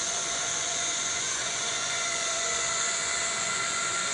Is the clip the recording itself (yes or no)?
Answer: no